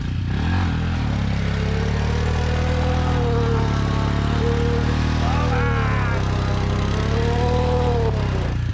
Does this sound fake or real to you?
real